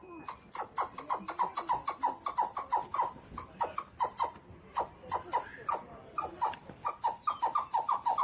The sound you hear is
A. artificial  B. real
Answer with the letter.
B